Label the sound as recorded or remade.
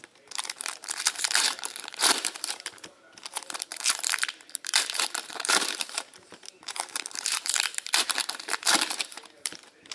remade